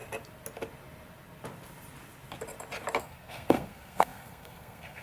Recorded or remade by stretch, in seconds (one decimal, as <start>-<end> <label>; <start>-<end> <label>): 0.0-3.0 recorded; 3.0-5.0 remade

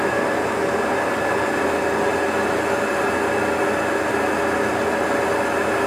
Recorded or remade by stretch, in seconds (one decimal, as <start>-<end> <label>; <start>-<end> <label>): 0.0-5.9 recorded

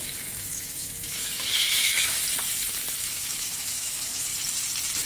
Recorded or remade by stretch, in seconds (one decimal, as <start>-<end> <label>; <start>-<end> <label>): 0.0-2.2 remade; 2.2-3.0 recorded; 3.0-4.3 remade; 4.3-5.1 recorded

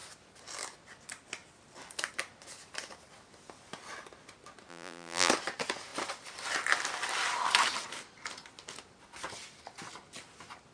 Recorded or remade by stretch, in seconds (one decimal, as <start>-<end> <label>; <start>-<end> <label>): 0.0-4.7 recorded; 4.7-5.3 remade; 5.3-10.7 recorded

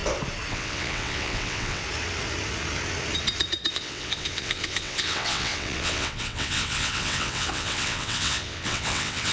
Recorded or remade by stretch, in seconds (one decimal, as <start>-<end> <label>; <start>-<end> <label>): 0.0-0.5 recorded; 0.5-1.8 remade; 1.8-3.7 recorded; 3.7-9.3 remade